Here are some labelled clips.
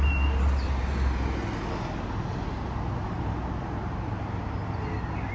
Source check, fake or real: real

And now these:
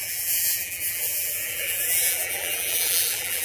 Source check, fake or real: fake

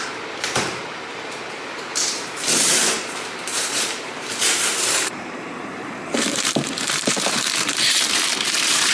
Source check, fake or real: fake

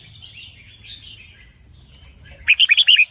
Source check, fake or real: real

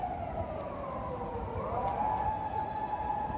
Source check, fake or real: real